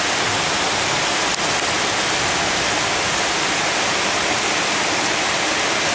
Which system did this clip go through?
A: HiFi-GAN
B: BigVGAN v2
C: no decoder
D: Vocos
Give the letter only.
C